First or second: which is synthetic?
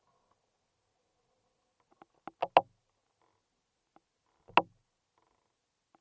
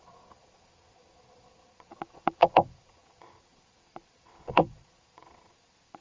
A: second